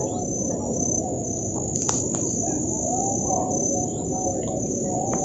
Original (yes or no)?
yes